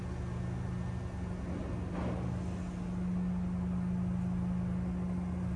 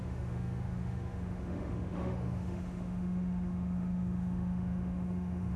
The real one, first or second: first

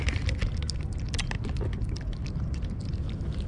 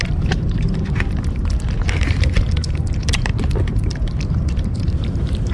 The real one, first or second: first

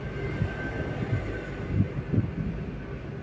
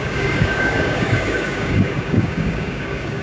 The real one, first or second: first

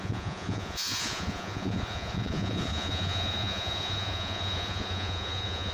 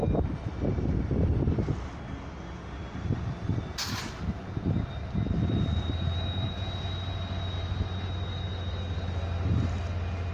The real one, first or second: second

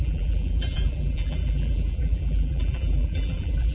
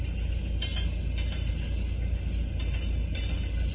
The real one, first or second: second